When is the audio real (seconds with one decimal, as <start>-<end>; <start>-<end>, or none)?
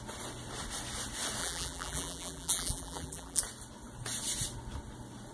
0.0-1.4; 3.4-5.3